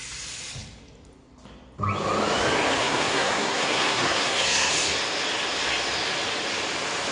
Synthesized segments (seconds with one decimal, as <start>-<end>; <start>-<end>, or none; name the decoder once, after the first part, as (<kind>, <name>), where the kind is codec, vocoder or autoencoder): 2.8-4.7 (codec, SNAC)